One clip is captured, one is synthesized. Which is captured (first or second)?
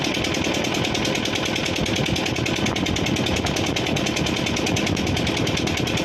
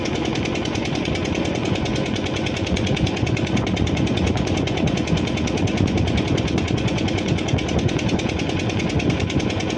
first